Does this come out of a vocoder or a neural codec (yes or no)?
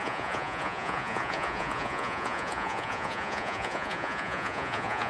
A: yes